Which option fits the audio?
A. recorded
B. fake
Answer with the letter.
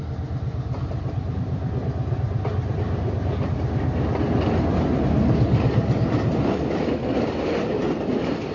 A